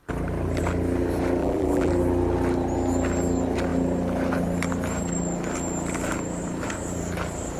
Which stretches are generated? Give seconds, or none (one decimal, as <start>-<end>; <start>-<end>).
1.4-1.9